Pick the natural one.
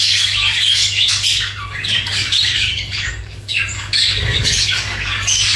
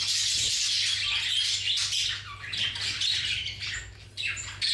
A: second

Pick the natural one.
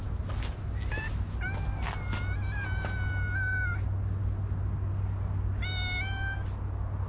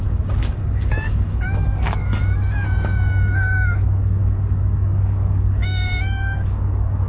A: first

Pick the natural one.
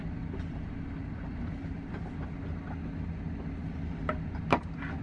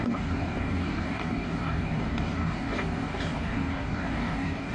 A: first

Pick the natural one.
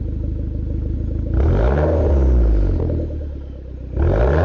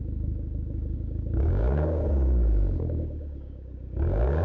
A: first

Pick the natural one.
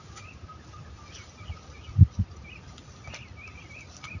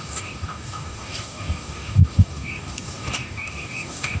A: first